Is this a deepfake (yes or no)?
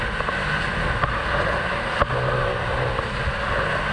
no